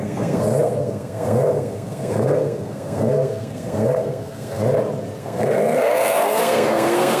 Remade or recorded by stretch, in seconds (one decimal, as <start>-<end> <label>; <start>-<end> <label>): 0.0-4.6 remade; 4.6-5.2 recorded; 5.2-7.2 remade